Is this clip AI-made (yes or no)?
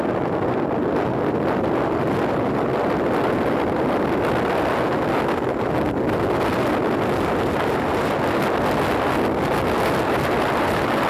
no